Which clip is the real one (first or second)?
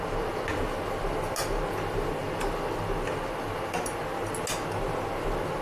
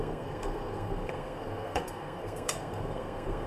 first